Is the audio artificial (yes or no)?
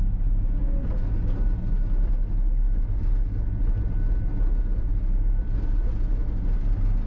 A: no